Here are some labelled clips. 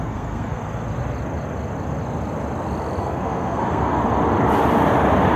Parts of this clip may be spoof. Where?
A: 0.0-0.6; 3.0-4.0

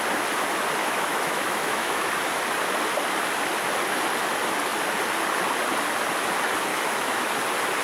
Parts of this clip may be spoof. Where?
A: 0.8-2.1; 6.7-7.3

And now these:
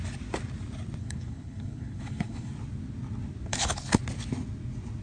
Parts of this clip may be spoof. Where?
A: 1.0-2.5; 3.5-4.0

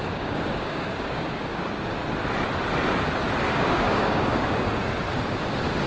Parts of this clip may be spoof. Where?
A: 0.0-2.0; 3.5-4.8